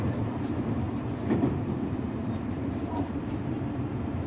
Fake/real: fake